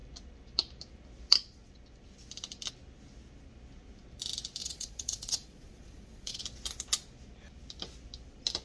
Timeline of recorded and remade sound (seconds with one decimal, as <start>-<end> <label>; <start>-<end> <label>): 0.0-4.6 recorded; 4.6-6.4 remade; 6.4-8.6 recorded